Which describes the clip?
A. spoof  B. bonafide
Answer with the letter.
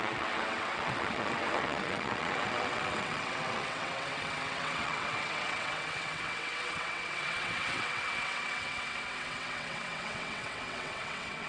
A